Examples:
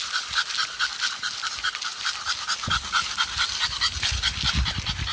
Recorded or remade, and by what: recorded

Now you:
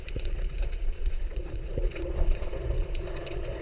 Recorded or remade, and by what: remade, vocoder, Vocos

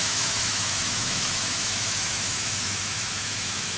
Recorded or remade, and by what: remade, autoencoder, DAC-VAE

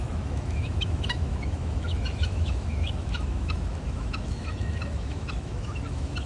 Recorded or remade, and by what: remade, autoencoder, DAC-VAE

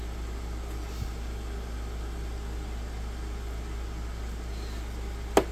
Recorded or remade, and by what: recorded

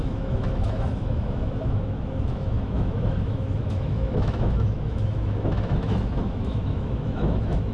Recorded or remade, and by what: remade, autoencoder, DAC-VAE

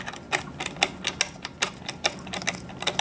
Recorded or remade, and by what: recorded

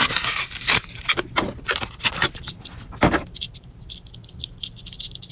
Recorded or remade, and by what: recorded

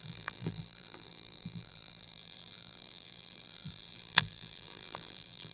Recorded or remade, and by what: remade, vocoder, BigVGAN v2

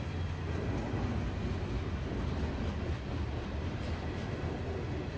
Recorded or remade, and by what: recorded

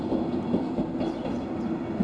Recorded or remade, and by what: recorded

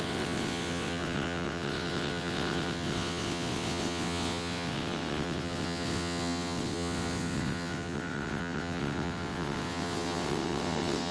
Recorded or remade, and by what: remade, vocoder, WaveNeXt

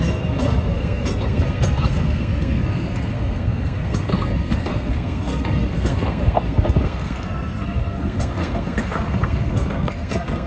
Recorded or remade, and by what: remade, codec, SNAC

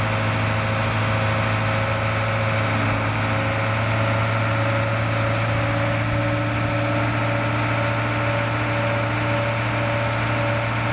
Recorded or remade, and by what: recorded